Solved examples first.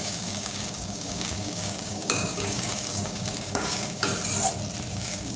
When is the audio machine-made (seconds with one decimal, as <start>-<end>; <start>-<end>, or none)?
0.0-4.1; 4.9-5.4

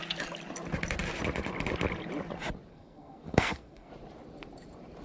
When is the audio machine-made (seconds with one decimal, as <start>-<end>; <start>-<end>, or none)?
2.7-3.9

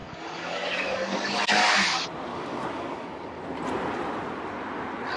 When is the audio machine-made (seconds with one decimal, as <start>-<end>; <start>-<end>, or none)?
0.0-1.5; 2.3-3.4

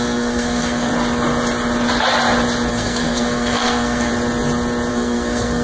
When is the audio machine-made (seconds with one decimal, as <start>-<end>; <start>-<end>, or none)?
0.0-0.9; 2.7-4.1; 4.9-5.6